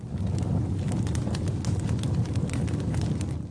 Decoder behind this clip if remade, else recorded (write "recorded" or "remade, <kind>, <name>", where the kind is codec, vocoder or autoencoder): recorded